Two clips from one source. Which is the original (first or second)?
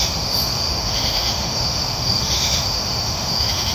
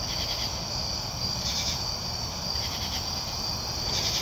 second